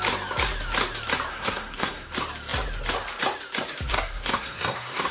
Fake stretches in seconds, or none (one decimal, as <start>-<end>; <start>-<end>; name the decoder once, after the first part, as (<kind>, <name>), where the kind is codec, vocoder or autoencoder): 1.3-2.1 (codec, SNAC); 3.9-5.1